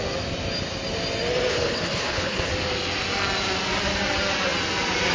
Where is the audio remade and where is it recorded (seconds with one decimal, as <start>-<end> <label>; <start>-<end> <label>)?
0.0-1.5 recorded; 1.5-2.5 remade; 2.5-5.1 recorded